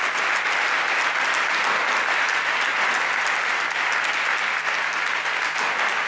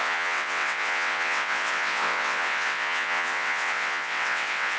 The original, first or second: first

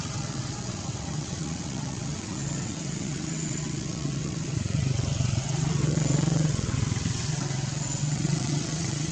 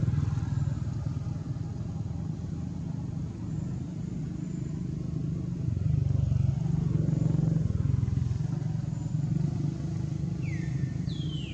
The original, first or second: second